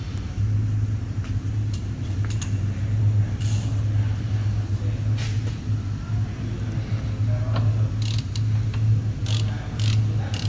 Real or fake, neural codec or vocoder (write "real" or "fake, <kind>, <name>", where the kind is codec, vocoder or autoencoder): real